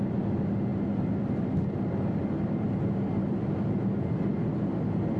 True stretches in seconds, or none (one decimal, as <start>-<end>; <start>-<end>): 0.0-5.2